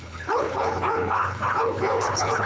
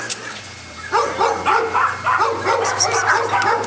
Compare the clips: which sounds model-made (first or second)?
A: first